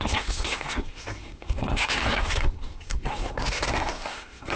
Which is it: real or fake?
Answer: fake